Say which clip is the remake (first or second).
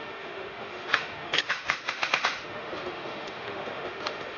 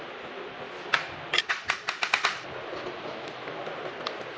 first